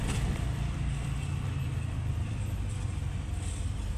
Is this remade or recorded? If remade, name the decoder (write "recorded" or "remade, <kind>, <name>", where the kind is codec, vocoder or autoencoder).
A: recorded